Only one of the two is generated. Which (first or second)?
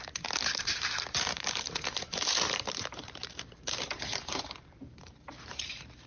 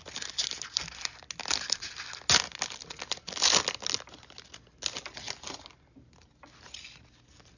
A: first